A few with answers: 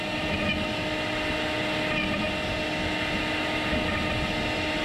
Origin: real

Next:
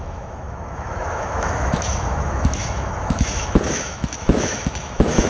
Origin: fake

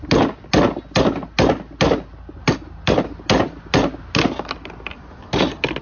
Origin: real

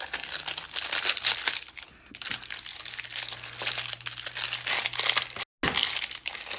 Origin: real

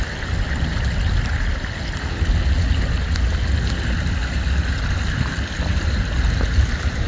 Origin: real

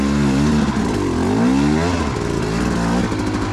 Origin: real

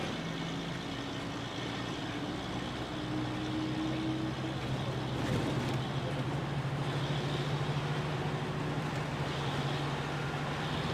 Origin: real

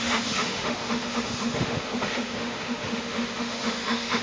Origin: fake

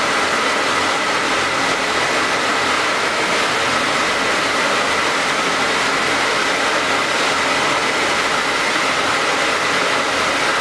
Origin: real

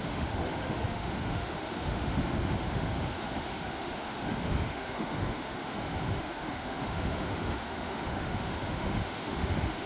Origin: fake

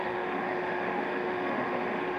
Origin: fake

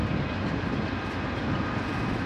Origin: real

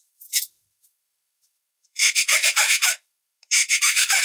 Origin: fake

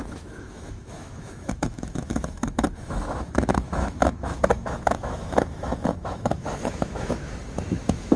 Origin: fake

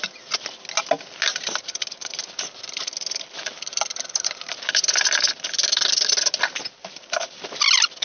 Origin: real